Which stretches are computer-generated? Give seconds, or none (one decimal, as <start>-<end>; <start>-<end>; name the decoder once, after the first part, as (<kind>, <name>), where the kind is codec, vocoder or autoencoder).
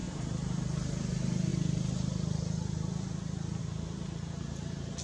0.0-0.6 (vocoder, BigVGAN v2)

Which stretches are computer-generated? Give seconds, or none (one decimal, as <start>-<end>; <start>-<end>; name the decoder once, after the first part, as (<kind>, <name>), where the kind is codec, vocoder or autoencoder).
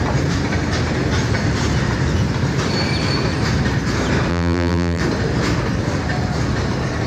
4.3-5.0 (vocoder, BigVGAN v2)